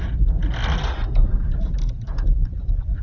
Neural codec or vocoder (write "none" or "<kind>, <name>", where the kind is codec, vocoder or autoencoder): none